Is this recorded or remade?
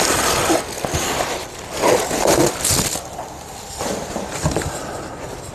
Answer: recorded